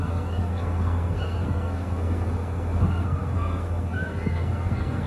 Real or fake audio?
fake